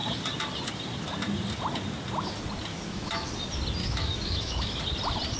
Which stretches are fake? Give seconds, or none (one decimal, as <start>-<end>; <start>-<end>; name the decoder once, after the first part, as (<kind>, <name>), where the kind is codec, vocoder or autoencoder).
2.7-3.3 (autoencoder, DAC-VAE); 3.8-4.8